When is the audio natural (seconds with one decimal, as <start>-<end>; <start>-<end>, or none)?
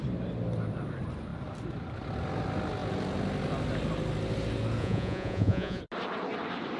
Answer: 0.0-4.8; 5.8-6.8